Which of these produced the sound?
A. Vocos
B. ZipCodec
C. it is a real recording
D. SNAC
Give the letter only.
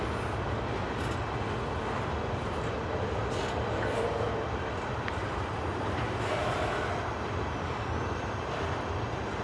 C